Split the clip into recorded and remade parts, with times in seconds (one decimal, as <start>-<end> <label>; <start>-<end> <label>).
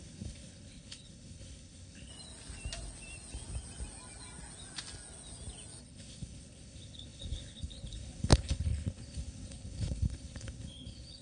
0.0-2.1 remade; 2.1-5.8 recorded; 5.8-11.2 remade